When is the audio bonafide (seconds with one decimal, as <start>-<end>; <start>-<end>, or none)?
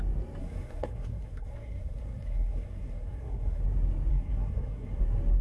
0.0-0.4; 3.6-4.1; 5.0-5.4